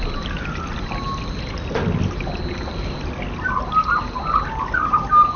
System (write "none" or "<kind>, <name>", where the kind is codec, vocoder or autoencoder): none